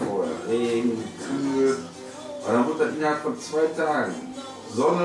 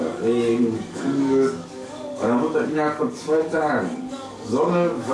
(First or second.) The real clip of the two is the first